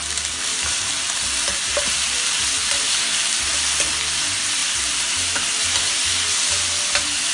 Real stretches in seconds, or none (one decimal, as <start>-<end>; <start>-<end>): 0.0-0.5; 2.9-7.3